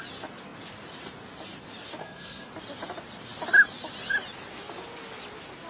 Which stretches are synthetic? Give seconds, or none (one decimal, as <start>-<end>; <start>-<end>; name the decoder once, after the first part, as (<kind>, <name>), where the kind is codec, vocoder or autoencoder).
2.0-2.5 (codec, SNAC)